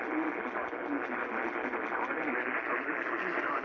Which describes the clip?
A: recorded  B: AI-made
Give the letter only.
A